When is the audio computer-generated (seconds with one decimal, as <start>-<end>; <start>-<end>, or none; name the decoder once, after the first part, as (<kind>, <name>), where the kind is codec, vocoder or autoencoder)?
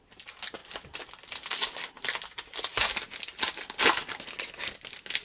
none